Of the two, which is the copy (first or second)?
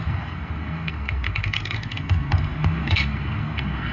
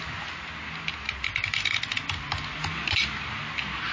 first